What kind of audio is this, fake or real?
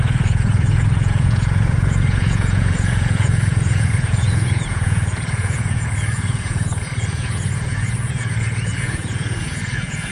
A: fake